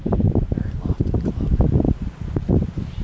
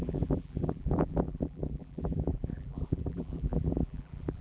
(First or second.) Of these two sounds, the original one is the first